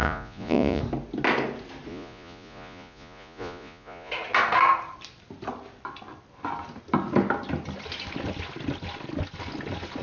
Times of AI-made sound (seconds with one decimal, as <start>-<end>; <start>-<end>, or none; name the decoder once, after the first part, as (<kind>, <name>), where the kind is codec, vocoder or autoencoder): 0.0-0.8 (vocoder, Vocos); 1.9-4.1